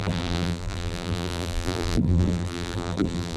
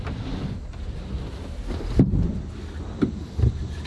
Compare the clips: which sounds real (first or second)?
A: second